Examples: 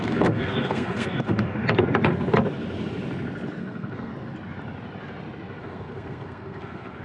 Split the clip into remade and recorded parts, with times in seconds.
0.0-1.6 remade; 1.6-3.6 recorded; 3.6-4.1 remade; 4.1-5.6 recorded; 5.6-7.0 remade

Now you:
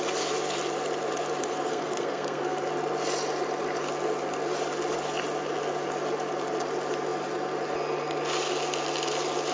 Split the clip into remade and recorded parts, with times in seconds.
0.0-1.4 recorded; 1.4-2.7 remade; 2.7-9.5 recorded

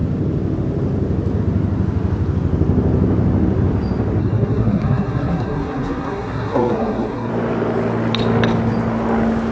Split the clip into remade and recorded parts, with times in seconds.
0.0-4.2 recorded; 4.2-7.3 remade; 7.3-9.5 recorded

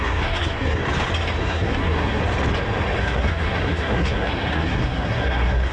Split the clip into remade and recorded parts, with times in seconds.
0.0-0.8 remade; 0.8-1.4 recorded; 1.4-2.2 remade; 2.2-3.0 recorded; 3.0-5.7 remade